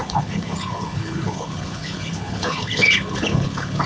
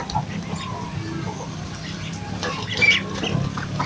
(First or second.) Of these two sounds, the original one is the second